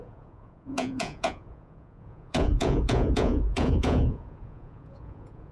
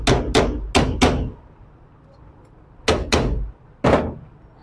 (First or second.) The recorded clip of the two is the second